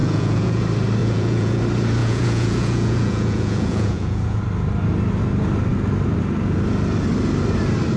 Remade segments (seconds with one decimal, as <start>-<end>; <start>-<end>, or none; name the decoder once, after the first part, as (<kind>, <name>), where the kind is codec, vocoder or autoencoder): 0.0-0.6 (vocoder, Vocos); 1.0-1.6; 2.0-4.4